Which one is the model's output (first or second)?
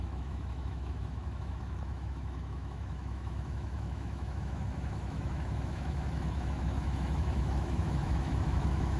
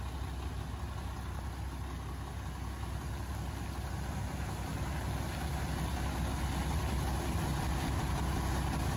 first